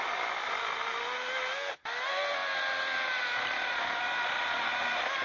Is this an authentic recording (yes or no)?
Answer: yes